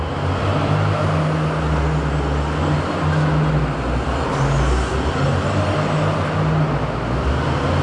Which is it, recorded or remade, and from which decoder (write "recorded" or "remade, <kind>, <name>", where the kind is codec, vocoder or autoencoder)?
recorded